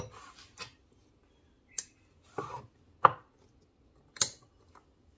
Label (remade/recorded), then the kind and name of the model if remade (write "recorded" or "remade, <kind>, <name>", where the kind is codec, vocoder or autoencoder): recorded